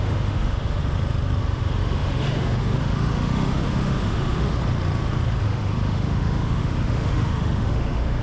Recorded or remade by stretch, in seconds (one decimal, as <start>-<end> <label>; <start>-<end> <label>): 0.0-0.8 remade; 0.8-1.4 recorded; 1.4-4.6 remade; 4.6-5.4 recorded; 5.4-8.2 remade